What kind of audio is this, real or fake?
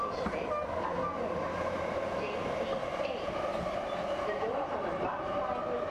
real